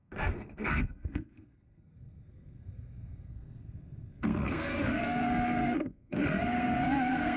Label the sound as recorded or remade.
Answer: remade